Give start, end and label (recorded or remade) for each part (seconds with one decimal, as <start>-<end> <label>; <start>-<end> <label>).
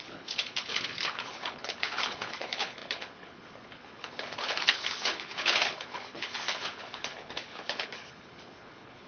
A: 0.0-9.1 remade